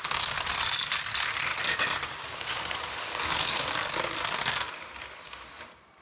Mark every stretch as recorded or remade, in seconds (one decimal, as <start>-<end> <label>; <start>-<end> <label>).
0.0-1.5 recorded; 1.5-3.6 remade; 3.6-6.0 recorded